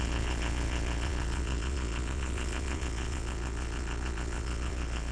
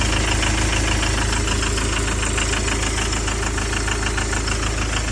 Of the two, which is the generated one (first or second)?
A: first